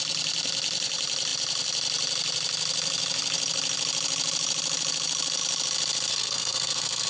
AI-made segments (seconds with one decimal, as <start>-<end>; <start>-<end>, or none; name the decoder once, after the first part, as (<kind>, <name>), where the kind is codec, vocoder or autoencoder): 6.1-7.1 (codec, SNAC)

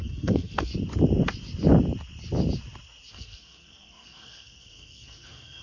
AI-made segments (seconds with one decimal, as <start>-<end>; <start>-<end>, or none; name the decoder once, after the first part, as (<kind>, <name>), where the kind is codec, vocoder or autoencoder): 0.0-0.7 (codec, SNAC); 3.1-5.6

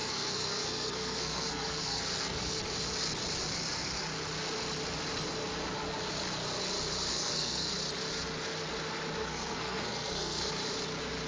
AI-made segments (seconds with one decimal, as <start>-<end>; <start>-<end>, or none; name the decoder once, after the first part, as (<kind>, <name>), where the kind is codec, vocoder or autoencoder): 0.0-2.6 (codec, SNAC); 7.1-7.7; 9.2-10.5

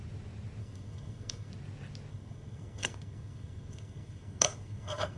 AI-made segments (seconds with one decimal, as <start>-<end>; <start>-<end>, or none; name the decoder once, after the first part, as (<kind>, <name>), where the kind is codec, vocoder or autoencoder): 0.6-1.5 (codec, SNAC); 2.1-5.2